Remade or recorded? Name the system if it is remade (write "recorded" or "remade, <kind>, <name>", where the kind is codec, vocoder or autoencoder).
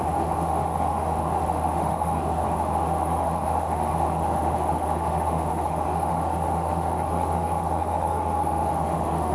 remade, autoencoder, DAC-VAE